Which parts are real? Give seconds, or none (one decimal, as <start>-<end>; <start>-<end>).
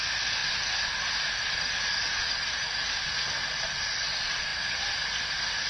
0.0-5.7